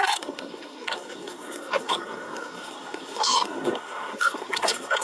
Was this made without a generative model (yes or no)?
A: no